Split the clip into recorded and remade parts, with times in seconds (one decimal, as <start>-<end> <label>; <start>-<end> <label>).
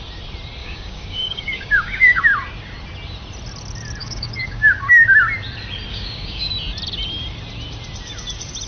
0.0-0.6 recorded; 0.6-2.2 remade; 2.2-4.0 recorded; 4.0-4.7 remade; 4.7-5.9 recorded; 5.9-6.5 remade; 6.5-8.7 recorded